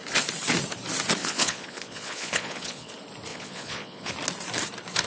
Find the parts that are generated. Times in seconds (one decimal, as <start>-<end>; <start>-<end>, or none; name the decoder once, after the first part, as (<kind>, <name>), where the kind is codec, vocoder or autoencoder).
1.2-2.9 (vocoder, Vocos); 3.3-4.1